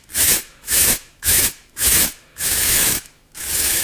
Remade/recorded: remade